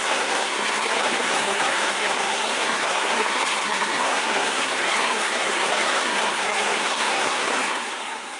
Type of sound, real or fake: fake